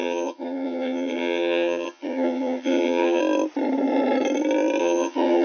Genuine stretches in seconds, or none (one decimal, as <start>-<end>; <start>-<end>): 3.2-4.8